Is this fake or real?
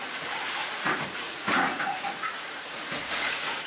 fake